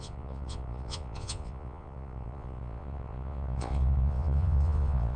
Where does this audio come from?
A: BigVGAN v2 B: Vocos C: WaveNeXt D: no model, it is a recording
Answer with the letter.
B